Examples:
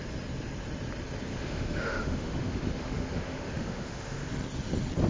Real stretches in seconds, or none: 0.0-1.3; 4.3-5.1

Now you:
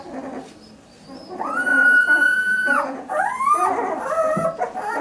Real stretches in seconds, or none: 0.0-1.7; 3.2-5.0